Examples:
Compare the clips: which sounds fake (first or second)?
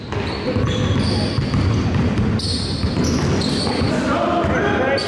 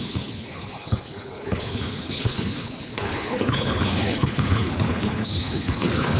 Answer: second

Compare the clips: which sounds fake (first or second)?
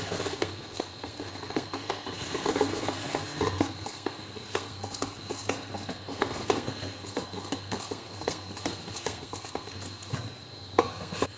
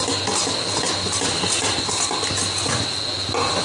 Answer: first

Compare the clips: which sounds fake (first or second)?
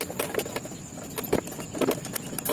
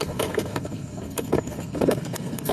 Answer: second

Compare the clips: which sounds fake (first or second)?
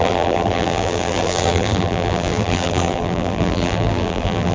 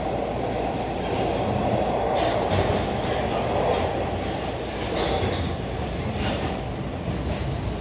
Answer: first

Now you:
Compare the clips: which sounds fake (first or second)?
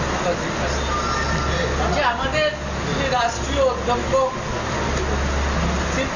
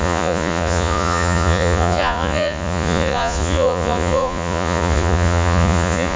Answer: second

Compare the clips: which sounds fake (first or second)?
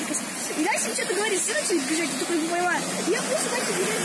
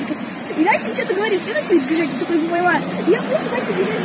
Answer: second